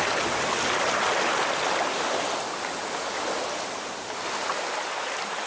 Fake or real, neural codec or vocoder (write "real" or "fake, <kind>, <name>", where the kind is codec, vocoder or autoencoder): real